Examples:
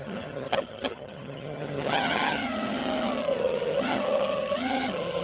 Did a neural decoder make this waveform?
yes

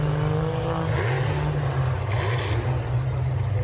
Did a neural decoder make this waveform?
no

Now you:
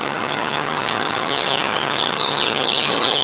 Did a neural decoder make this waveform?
yes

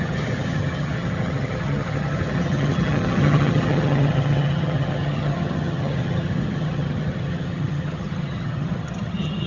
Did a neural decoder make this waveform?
yes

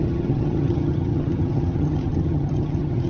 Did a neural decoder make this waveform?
yes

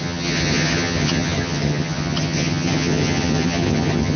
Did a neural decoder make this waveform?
yes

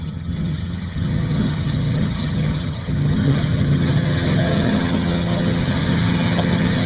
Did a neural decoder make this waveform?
yes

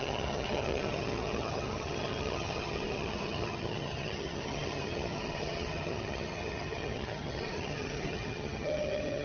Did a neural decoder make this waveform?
yes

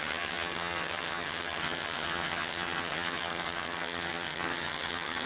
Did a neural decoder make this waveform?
yes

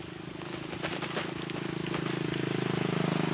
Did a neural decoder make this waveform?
no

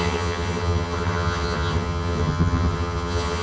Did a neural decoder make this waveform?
yes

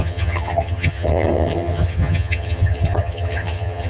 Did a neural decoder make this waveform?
yes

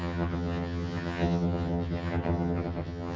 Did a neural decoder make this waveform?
yes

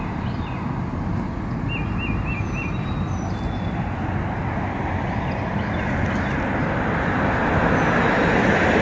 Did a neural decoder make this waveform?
no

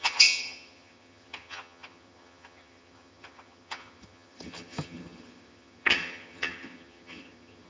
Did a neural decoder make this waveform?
yes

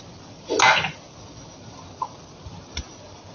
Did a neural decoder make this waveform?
no